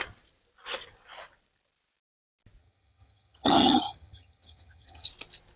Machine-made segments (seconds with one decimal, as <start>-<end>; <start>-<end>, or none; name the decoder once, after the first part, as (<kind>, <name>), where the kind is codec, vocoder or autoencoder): 2.6-5.1 (vocoder, HiFi-GAN)